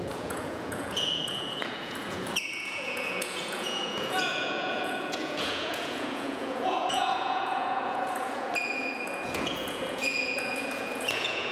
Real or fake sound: fake